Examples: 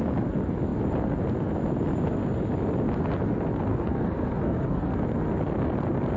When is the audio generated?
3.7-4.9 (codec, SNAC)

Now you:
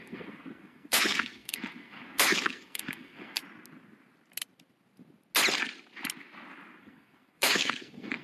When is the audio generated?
0.0-3.4 (codec, SNAC); 6.8-8.2

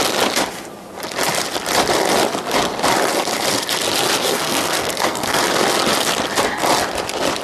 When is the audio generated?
4.2-5.4 (codec, SNAC)

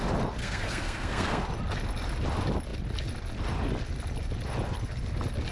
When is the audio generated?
0.4-1.4 (codec, SNAC)

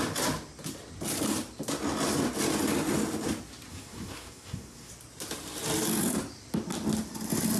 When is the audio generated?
3.7-4.9 (codec, SNAC)